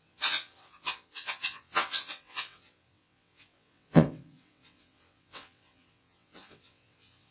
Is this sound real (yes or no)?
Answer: no